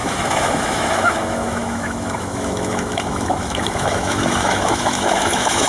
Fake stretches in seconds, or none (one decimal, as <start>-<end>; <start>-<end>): 0.0-5.7